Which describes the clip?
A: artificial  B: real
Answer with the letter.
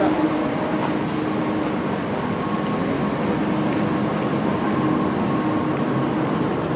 B